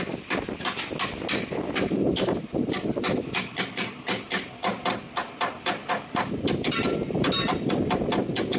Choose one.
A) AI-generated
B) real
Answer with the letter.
B